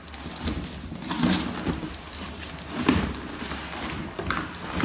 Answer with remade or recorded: recorded